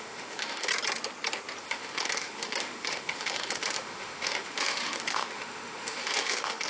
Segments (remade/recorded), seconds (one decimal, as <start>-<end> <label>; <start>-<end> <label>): 0.0-0.7 remade; 0.7-1.6 recorded; 1.6-6.7 remade